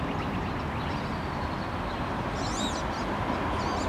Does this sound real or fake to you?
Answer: real